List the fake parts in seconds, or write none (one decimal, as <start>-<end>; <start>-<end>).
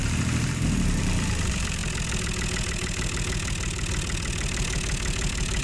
0.0-1.8